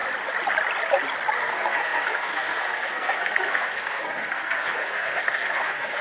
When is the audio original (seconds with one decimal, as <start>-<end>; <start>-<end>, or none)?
0.0-1.4